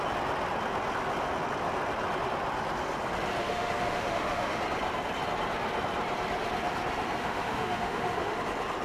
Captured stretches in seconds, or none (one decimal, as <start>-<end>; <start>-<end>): 0.0-3.4; 4.6-7.2; 8.4-8.8